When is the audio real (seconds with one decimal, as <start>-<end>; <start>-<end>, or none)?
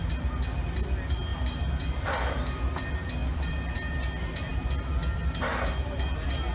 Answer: 0.0-1.3; 2.7-3.2; 3.9-6.5